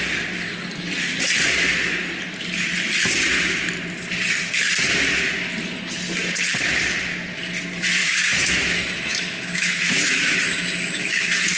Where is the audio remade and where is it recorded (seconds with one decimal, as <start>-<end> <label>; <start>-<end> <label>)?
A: 0.0-8.0 recorded; 8.0-11.6 remade